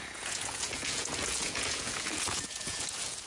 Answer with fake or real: fake